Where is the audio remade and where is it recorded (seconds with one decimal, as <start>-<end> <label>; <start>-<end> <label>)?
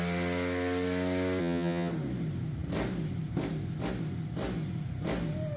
0.0-1.4 recorded; 1.4-1.9 remade; 1.9-5.6 recorded